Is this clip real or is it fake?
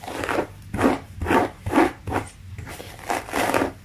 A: real